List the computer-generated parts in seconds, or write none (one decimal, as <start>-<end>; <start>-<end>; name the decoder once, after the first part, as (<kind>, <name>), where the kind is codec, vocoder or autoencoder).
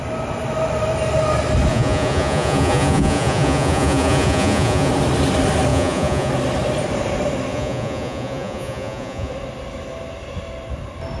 1.7-4.9 (vocoder, Vocos); 5.7-6.3; 7.5-9.3